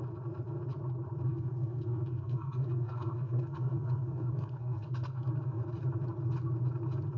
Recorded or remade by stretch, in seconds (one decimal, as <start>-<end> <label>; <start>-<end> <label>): 0.0-1.3 recorded; 1.3-5.6 remade; 5.6-7.2 recorded

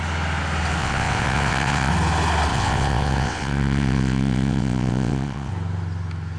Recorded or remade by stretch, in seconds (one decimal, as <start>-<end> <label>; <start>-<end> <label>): 0.0-0.8 recorded; 0.8-1.9 remade; 1.9-2.5 recorded; 2.5-5.5 remade; 5.5-6.4 recorded

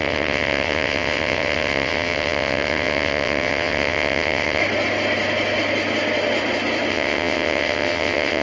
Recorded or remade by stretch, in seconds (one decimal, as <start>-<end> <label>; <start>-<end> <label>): 0.0-4.6 remade; 4.6-6.9 recorded; 6.9-8.4 remade

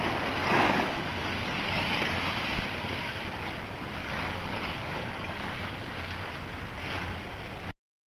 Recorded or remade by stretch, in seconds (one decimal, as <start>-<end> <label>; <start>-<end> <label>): 0.0-0.4 recorded; 0.4-2.2 remade; 2.2-4.0 recorded; 4.0-6.3 remade; 6.3-8.2 recorded

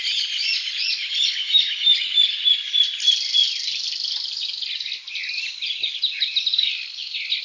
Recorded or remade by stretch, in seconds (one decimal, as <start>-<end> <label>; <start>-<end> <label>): 0.0-0.5 recorded; 0.5-2.5 remade; 2.5-3.4 recorded; 3.4-7.4 remade

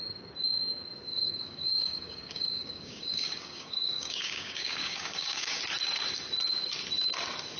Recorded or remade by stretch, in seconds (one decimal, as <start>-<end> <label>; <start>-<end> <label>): 0.0-1.1 recorded; 1.1-5.6 remade; 5.6-7.6 recorded